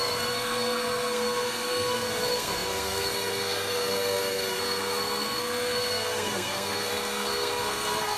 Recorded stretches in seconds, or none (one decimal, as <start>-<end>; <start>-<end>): none

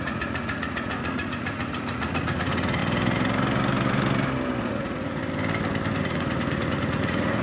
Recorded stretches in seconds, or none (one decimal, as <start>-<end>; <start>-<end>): 2.8-4.6; 5.2-6.0